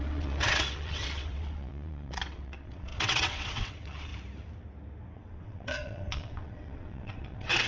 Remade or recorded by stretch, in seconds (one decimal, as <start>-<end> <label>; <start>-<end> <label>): 0.0-4.1 remade; 4.1-5.1 recorded; 5.1-7.7 remade

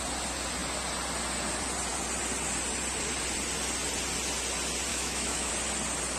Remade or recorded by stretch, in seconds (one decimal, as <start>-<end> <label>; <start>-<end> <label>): 0.0-4.9 recorded; 4.9-5.5 remade; 5.5-6.2 recorded